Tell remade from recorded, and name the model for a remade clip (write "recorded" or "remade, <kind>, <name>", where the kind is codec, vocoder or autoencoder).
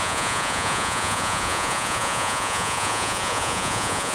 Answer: remade, vocoder, Vocos